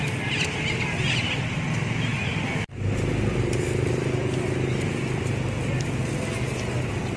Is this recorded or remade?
recorded